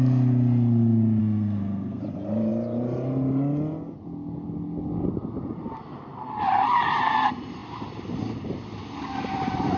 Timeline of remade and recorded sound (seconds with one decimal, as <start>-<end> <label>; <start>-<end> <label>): 0.0-1.2 recorded; 1.2-2.0 remade; 2.0-9.8 recorded